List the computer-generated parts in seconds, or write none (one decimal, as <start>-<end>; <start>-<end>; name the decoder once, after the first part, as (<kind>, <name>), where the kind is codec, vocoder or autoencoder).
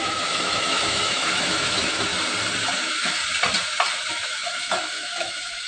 0.0-2.1 (autoencoder, DAC-VAE); 2.8-3.2; 4.1-5.7